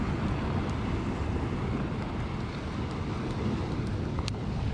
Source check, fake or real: real